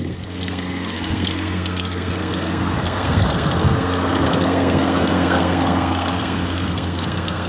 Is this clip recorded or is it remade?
remade